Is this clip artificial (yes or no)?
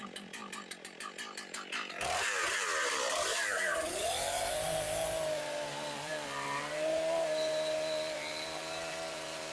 yes